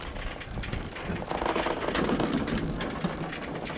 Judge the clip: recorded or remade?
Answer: recorded